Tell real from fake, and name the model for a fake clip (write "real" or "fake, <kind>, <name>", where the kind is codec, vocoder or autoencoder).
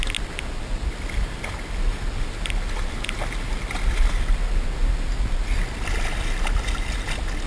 real